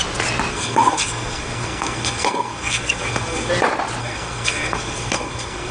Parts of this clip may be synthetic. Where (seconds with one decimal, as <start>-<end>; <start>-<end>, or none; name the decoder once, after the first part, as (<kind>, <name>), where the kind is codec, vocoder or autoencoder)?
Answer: 0.5-3.5 (codec, SNAC); 4.0-5.7